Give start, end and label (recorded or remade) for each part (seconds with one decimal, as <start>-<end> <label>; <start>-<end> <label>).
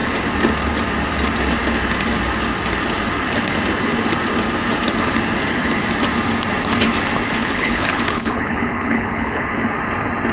0.0-7.4 recorded; 7.4-9.4 remade; 9.4-10.3 recorded